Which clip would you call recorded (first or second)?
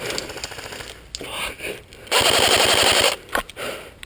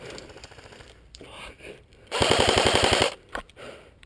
first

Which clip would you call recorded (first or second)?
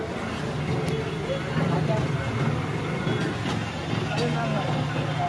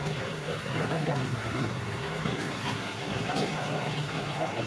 first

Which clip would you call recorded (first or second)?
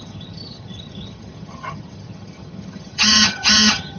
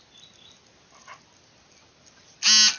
second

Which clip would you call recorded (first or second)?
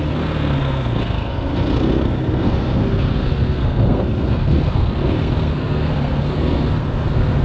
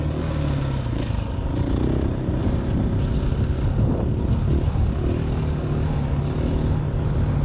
second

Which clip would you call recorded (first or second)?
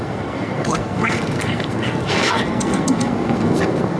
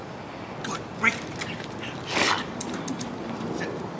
second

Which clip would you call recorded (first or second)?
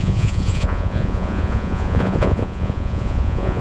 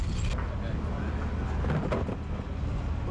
second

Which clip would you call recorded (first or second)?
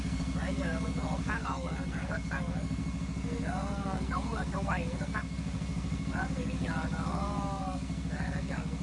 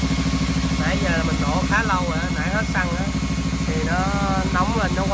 second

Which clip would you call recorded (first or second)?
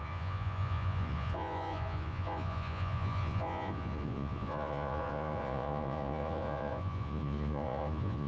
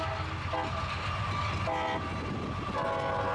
second